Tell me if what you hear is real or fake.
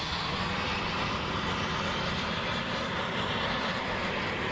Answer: real